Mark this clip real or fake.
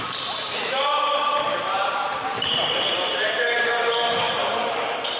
fake